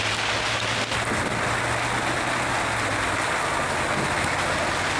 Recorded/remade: recorded